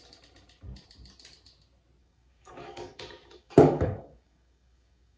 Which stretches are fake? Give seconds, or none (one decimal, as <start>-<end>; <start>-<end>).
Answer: 2.0-5.2